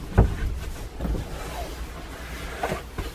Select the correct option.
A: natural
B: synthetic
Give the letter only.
A